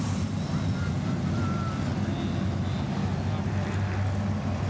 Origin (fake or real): real